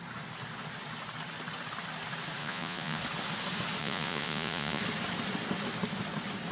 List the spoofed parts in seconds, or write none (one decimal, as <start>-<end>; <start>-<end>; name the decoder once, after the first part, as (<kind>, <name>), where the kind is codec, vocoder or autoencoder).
2.4-3.0 (vocoder, Vocos); 3.8-4.8